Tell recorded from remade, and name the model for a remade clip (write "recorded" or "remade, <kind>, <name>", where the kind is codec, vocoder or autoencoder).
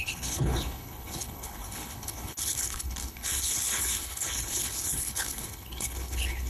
remade, codec, HILCodec